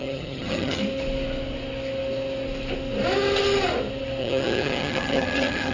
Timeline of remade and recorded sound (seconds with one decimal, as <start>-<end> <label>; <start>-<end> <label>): 0.0-0.8 remade; 0.8-4.2 recorded; 4.2-5.7 remade